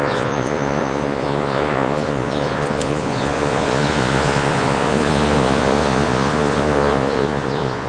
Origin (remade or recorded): remade